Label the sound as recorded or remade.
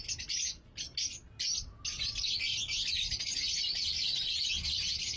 recorded